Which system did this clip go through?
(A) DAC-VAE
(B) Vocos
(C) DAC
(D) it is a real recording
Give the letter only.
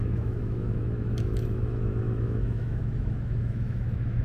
A